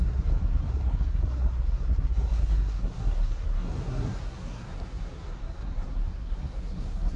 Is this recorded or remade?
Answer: remade